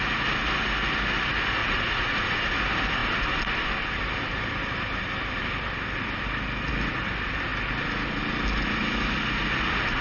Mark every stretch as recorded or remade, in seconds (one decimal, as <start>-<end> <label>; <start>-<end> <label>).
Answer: 0.0-1.6 recorded; 1.6-2.5 remade; 2.5-10.0 recorded